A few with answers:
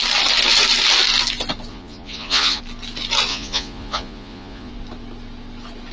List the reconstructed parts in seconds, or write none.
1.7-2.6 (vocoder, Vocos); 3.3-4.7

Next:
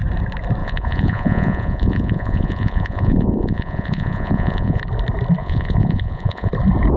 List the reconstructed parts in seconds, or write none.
0.6-4.8 (vocoder, Vocos); 5.4-6.5

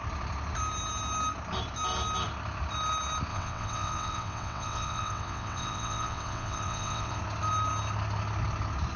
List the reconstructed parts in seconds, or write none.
3.3-7.2 (vocoder, WaveNeXt)

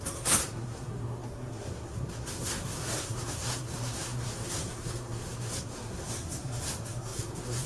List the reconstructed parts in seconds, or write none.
0.0-7.7 (codec, SNAC)

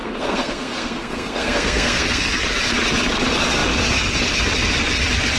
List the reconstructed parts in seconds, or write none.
0.0-2.2 (codec, SNAC)